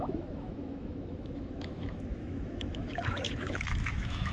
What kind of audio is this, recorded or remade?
remade